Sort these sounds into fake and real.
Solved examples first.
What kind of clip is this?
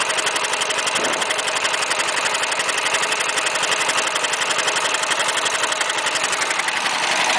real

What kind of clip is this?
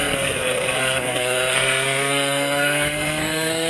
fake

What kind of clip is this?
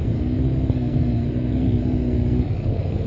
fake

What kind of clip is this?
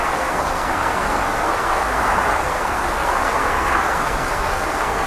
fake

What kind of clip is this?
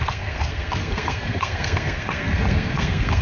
fake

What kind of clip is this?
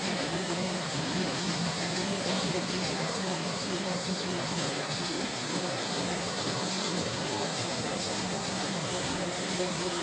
fake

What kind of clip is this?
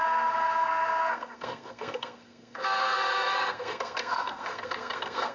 fake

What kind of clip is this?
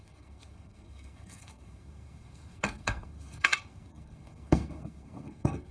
fake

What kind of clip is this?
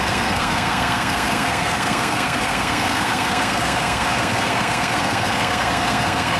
fake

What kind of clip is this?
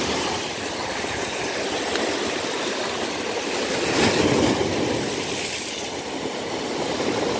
real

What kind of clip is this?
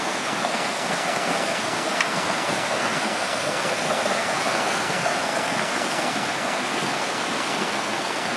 fake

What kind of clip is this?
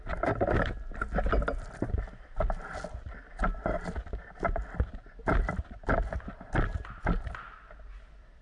real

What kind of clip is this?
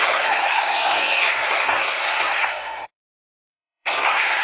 fake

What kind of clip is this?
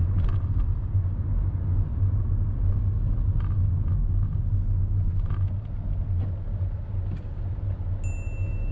real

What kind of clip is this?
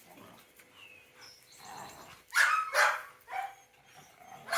real